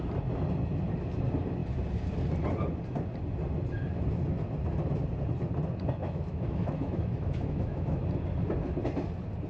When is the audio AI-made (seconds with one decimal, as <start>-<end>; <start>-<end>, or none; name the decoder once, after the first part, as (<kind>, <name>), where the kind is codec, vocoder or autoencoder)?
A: 6.0-8.0 (autoencoder, DAC-VAE)